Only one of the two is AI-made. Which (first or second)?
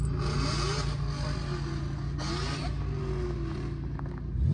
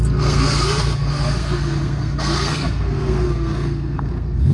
second